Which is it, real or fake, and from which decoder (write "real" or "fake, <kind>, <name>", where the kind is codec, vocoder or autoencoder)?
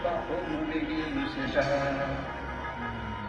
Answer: real